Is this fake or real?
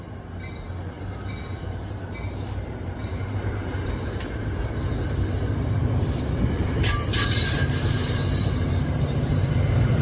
fake